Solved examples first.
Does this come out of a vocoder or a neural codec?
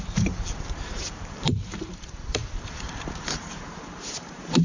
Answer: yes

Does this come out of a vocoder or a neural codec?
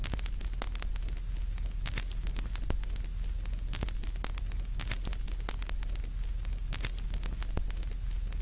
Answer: no